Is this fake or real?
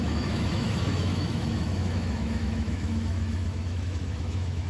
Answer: fake